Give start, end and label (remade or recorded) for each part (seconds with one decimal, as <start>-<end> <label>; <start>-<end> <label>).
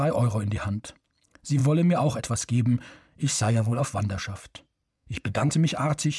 0.0-3.2 recorded; 3.2-3.8 remade; 3.8-4.9 recorded; 4.9-5.5 remade; 5.5-6.2 recorded